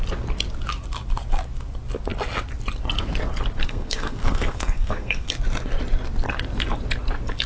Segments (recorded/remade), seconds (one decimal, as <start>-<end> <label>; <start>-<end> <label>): 0.0-3.6 recorded; 3.6-5.4 remade; 5.4-7.5 recorded